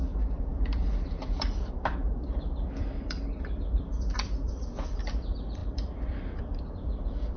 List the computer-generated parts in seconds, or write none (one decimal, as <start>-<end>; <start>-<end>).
0.0-7.4